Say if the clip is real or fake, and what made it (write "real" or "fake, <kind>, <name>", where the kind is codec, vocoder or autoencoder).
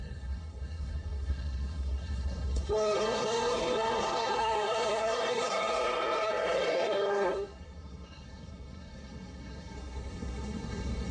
fake, codec, SNAC